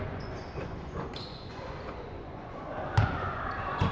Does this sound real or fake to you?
fake